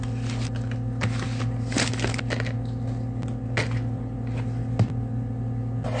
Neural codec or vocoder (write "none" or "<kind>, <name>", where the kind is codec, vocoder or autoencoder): none